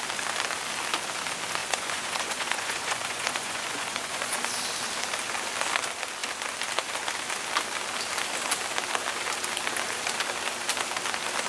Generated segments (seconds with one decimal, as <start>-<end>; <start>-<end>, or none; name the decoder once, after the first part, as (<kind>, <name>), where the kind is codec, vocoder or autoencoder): 1.6-4.4 (vocoder, Vocos)